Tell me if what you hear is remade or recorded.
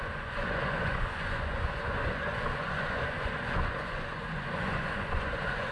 remade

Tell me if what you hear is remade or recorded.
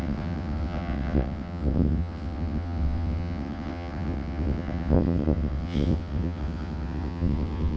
remade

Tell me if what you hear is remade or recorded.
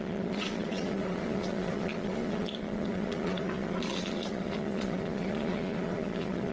remade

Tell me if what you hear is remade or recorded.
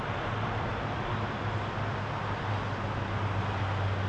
recorded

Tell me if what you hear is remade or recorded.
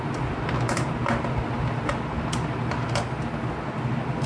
recorded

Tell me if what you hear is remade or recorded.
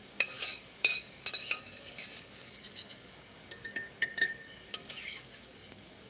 remade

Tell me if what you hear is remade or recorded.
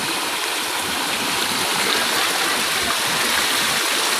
recorded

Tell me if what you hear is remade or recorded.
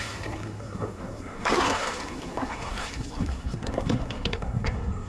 remade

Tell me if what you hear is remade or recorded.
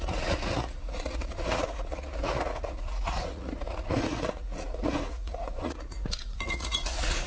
remade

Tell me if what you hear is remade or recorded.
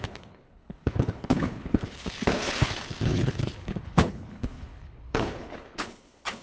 remade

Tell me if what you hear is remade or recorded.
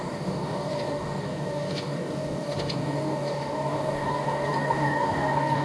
remade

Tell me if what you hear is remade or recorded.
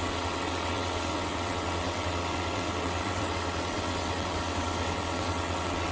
remade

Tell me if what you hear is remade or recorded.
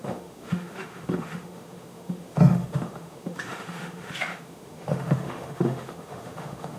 remade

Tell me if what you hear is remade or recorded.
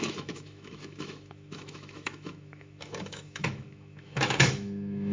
remade